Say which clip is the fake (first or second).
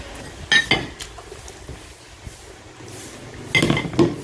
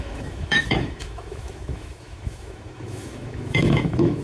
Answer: second